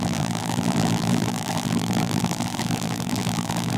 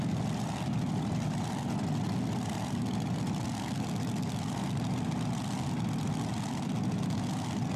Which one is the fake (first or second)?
first